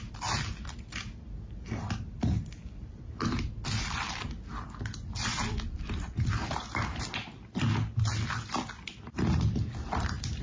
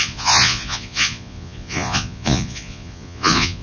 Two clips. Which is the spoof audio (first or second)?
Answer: second